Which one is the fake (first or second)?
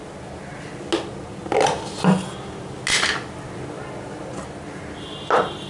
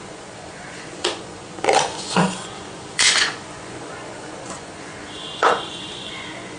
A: second